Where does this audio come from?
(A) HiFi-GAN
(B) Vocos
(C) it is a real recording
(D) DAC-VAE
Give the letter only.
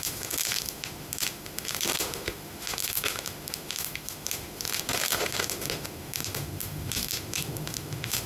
D